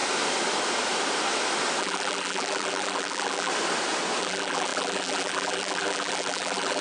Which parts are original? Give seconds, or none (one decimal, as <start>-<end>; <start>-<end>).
0.0-1.8; 3.5-4.2